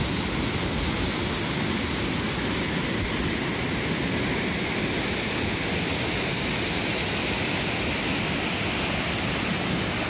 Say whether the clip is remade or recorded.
recorded